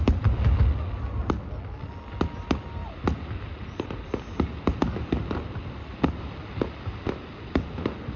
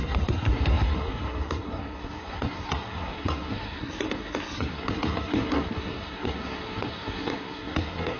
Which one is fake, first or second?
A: second